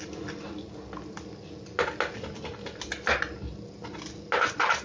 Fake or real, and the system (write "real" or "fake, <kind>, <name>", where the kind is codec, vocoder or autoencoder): real